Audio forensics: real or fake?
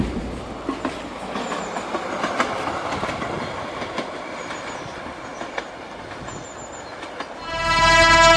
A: real